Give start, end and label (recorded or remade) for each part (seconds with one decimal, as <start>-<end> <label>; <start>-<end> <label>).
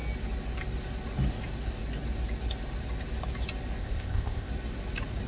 0.0-3.8 recorded; 3.8-4.5 remade; 4.5-5.3 recorded